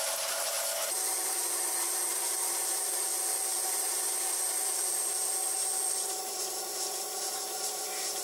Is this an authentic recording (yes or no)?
no